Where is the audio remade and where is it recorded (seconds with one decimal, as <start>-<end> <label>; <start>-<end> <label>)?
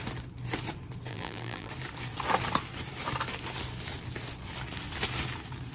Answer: 0.0-1.1 recorded; 1.1-1.7 remade; 1.7-5.7 recorded